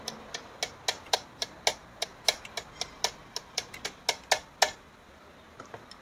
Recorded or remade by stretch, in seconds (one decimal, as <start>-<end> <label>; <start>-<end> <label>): 0.0-6.0 recorded